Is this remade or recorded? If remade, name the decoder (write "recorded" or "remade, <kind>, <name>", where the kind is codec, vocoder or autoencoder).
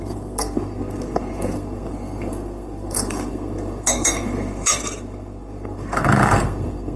remade, codec, SNAC